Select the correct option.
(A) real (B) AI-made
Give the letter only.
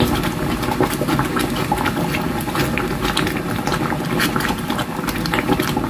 A